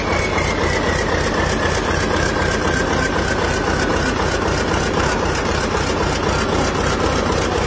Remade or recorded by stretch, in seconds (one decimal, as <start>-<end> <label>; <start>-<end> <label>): 0.0-7.7 recorded